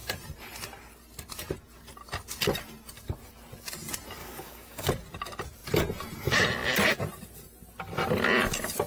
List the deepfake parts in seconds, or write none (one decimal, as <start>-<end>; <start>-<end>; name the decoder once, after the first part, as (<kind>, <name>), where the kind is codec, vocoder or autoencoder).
4.2-4.9 (codec, DAC)